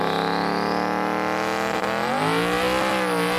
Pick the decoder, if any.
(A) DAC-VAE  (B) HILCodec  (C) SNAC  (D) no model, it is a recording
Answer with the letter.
D